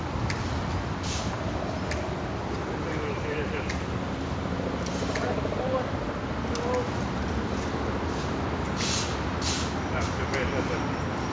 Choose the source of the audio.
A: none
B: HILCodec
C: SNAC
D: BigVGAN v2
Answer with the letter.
A